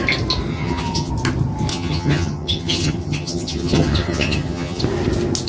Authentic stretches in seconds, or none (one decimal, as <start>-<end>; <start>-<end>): 0.0-0.5; 1.1-1.7; 4.8-5.5